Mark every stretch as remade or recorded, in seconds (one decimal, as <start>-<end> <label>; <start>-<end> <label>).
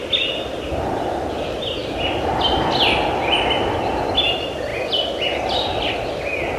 0.0-1.8 recorded; 1.8-4.1 remade; 4.1-4.7 recorded; 4.7-5.9 remade; 5.9-6.6 recorded